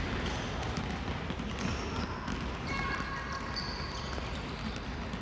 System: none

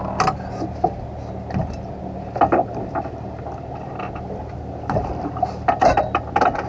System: none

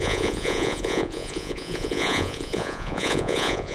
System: vocoder, Vocos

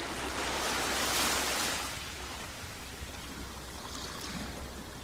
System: none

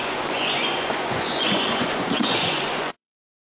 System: vocoder, Vocos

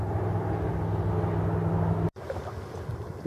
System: none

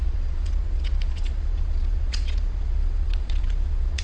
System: vocoder, Vocos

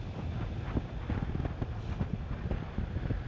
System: none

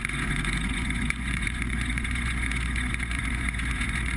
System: vocoder, Vocos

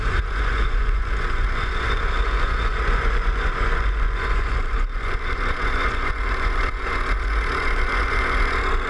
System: vocoder, Vocos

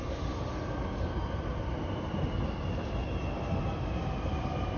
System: none